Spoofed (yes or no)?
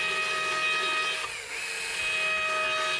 no